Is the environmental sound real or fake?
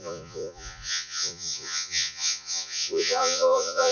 fake